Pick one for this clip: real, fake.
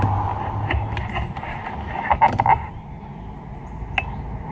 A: real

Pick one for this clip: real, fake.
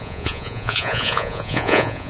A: fake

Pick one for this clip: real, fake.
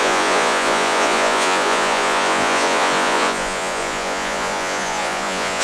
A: fake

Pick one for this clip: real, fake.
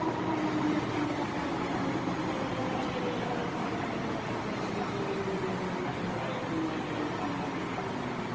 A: real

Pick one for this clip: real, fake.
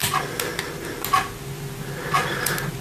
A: real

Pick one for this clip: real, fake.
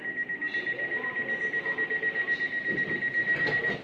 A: real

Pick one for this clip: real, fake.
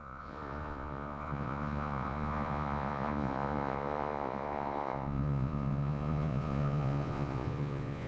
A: fake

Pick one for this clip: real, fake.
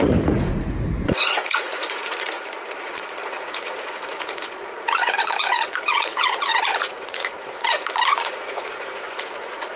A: fake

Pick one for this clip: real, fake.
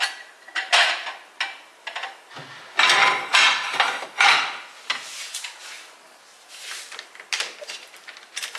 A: real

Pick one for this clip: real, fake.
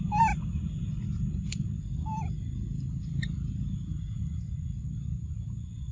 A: real